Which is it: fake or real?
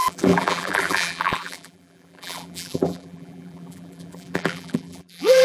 fake